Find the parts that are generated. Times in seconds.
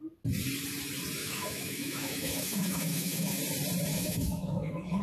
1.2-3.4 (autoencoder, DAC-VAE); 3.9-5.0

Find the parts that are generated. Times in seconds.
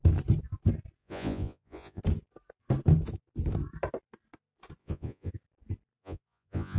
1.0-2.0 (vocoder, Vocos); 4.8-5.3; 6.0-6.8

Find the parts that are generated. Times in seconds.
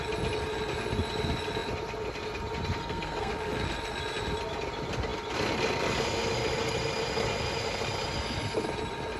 2.8-3.3 (codec, SNAC)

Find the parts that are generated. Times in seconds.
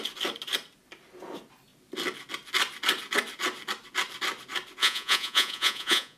4.8-6.2 (vocoder, Vocos)